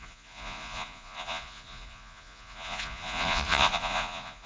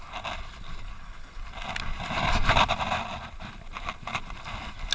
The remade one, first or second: first